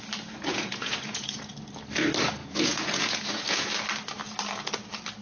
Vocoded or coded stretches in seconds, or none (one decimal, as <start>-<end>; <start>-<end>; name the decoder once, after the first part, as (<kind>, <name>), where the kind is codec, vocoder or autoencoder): 0.5-1.5 (vocoder, Vocos); 2.4-3.7

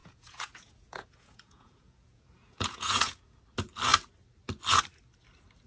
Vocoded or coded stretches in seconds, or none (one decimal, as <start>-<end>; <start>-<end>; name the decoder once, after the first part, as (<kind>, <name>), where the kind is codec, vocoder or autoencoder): 0.0-3.4 (vocoder, Vocos)

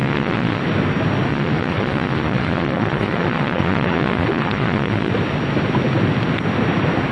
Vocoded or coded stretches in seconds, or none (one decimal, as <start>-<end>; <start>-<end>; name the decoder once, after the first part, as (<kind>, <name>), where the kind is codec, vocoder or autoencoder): 0.0-0.6 (vocoder, Vocos); 1.3-5.1

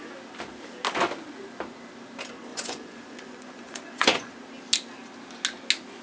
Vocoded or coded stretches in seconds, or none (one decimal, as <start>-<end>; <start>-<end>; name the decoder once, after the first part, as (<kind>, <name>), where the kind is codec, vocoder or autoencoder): 2.5-4.3 (vocoder, Vocos)

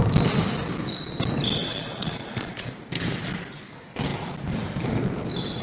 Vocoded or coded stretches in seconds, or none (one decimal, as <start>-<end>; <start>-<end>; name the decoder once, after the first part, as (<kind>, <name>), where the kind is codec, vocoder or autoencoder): 1.7-2.8 (vocoder, Vocos)

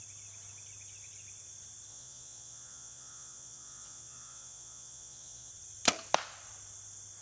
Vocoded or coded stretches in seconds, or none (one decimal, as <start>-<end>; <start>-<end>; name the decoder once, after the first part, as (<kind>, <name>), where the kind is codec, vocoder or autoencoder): 1.9-5.5 (vocoder, Vocos)